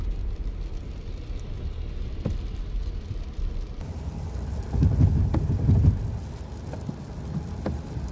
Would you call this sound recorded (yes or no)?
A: yes